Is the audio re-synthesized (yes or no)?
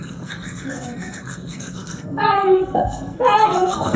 yes